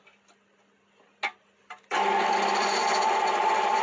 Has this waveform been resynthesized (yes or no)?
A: no